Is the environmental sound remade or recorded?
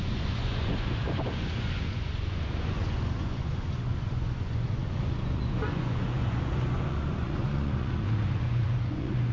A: remade